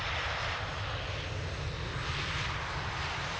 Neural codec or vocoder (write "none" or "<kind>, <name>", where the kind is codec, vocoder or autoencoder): none